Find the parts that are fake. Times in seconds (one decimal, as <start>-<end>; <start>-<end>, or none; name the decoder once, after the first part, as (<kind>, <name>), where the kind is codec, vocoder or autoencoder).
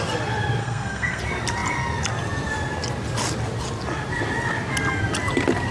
0.6-1.2 (codec, SNAC)